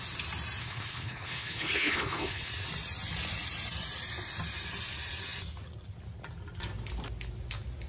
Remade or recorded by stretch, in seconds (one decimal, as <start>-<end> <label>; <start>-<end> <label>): 0.0-0.6 recorded; 0.6-2.5 remade; 2.5-7.9 recorded